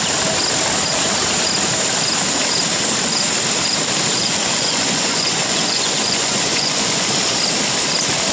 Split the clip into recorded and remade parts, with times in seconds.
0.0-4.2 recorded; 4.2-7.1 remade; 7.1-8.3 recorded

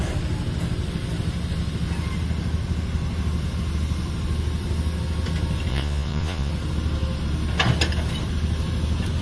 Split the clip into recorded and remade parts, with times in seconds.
0.0-5.7 recorded; 5.7-6.5 remade; 6.5-9.2 recorded

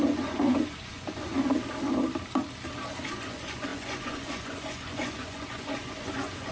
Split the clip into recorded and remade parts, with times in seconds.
0.0-1.3 remade; 1.3-3.1 recorded; 3.1-6.5 remade